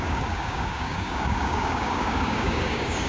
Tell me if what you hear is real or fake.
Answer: fake